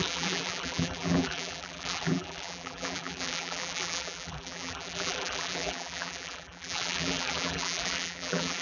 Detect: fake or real fake